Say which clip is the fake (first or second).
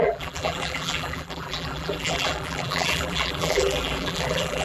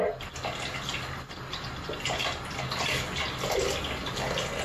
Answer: first